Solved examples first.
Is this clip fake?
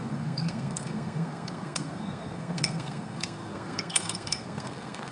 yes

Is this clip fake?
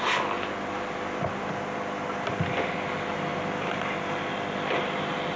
no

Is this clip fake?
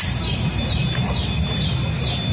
no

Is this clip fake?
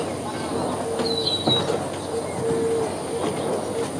no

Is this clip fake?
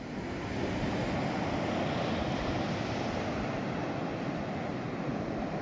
no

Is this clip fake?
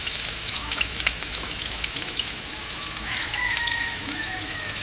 yes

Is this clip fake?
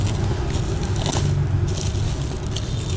no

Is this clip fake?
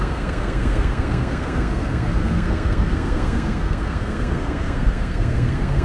yes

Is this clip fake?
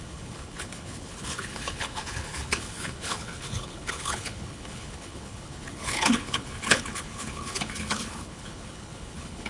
yes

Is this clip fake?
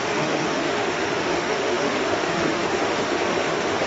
yes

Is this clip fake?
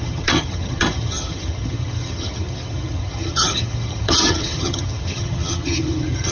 yes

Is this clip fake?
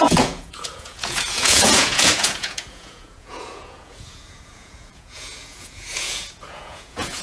yes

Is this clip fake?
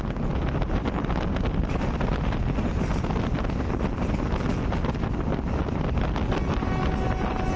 no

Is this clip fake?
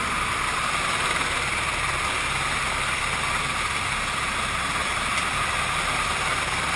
no